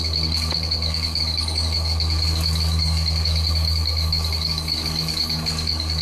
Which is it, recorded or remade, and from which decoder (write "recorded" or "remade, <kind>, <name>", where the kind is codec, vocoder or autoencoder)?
remade, codec, DAC